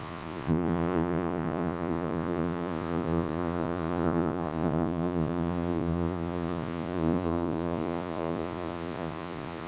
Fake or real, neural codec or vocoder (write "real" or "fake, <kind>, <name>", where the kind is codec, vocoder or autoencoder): fake, vocoder, Vocos